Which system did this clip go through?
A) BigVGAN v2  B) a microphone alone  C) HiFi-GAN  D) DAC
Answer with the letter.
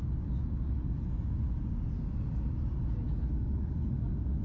B